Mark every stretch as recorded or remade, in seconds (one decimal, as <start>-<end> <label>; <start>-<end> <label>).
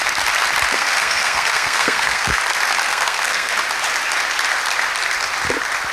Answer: 0.0-0.7 recorded; 0.7-2.4 remade; 2.4-2.9 recorded; 2.9-3.5 remade; 3.5-5.9 recorded